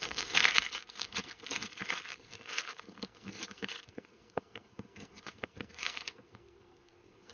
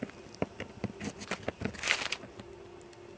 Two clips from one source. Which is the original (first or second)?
second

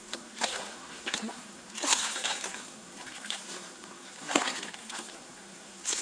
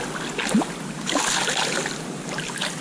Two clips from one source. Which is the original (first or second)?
second